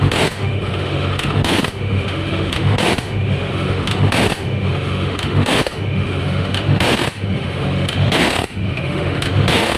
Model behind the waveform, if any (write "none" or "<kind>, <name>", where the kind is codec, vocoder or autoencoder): autoencoder, DAC-VAE